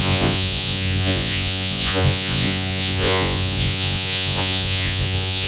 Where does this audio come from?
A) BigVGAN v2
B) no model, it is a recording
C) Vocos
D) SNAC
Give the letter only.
C